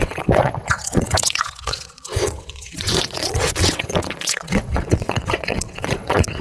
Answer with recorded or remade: remade